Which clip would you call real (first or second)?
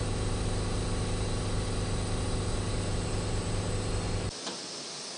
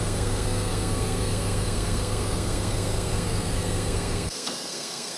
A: first